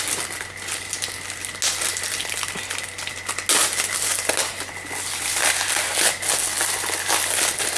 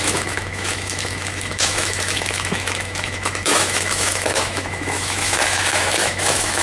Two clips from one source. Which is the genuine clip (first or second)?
first